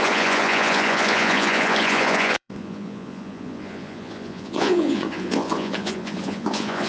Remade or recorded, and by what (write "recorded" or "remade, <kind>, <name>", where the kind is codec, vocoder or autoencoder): remade, vocoder, Vocos